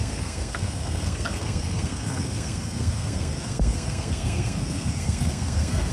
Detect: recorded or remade remade